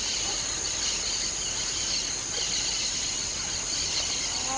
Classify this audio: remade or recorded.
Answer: recorded